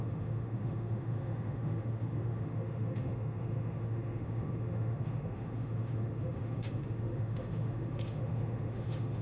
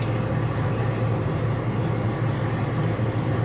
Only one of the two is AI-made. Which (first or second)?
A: first